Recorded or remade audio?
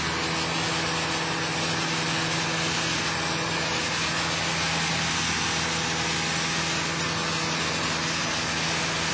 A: recorded